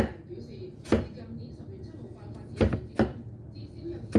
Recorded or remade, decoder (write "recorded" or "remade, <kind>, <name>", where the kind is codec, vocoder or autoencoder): recorded